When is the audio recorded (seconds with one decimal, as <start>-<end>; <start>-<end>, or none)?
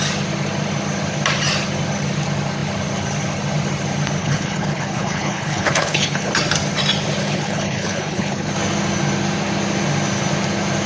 0.0-4.2; 6.3-7.2; 8.5-10.9